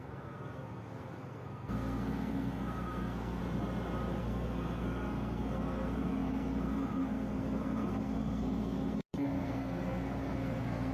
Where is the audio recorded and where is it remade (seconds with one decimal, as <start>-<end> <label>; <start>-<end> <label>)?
0.0-3.4 remade; 3.4-4.2 recorded; 4.2-10.9 remade